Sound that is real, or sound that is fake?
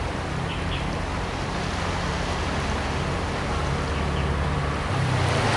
real